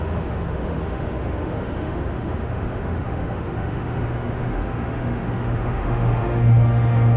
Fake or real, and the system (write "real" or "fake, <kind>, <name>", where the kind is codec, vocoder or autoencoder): fake, autoencoder, DAC-VAE